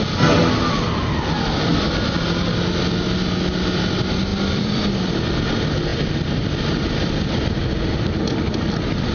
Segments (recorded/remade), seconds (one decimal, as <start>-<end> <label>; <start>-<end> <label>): 0.0-4.3 recorded; 4.3-5.5 remade; 5.5-5.9 recorded; 5.9-7.5 remade; 7.5-9.1 recorded